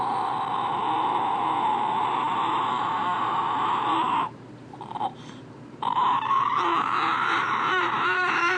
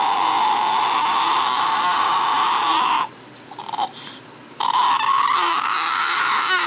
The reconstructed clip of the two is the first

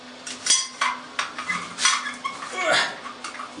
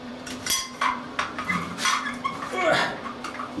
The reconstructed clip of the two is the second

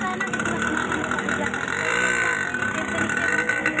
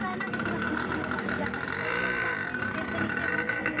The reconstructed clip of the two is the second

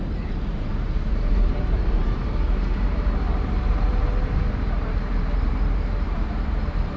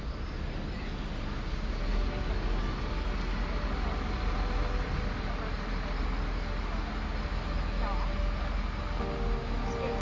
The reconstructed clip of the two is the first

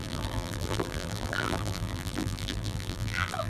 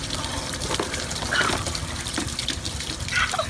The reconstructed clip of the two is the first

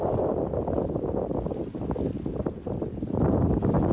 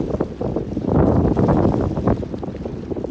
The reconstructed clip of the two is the first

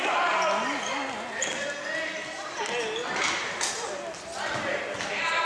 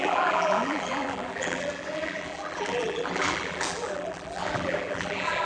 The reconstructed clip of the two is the second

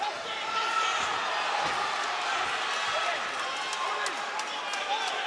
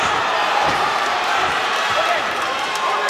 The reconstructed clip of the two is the second